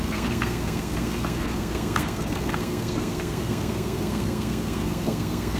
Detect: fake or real fake